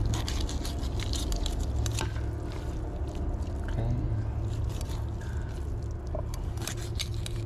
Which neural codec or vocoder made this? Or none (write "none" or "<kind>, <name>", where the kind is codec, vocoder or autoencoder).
none